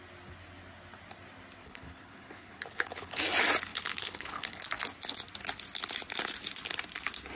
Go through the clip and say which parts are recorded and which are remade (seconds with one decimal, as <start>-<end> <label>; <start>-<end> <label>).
0.0-1.6 recorded; 1.6-3.2 remade; 3.2-3.7 recorded; 3.7-4.6 remade; 4.6-7.3 recorded

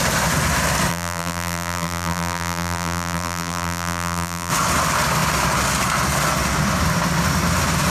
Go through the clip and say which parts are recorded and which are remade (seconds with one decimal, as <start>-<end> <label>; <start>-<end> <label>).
0.0-0.9 recorded; 0.9-4.5 remade; 4.5-7.9 recorded

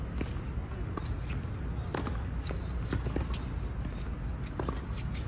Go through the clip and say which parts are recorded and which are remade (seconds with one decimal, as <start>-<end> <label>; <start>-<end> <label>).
0.0-5.3 recorded

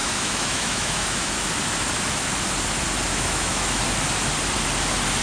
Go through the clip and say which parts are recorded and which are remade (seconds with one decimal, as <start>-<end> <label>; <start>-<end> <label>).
0.0-1.5 remade; 1.5-3.1 recorded; 3.1-3.8 remade; 3.8-5.2 recorded